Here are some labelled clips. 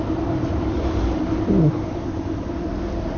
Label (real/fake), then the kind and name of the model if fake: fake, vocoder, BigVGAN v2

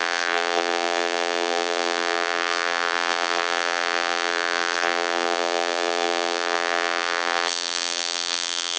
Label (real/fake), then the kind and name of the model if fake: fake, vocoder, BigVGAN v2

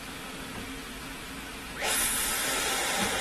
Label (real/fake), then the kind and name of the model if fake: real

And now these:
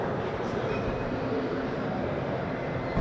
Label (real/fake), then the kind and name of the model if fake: fake, vocoder, BigVGAN v2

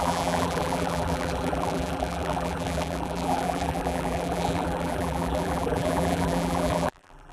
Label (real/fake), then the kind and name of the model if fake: fake, vocoder, BigVGAN v2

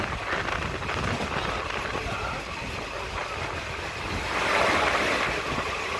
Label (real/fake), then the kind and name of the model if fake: real